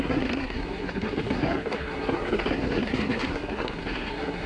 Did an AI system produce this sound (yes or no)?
yes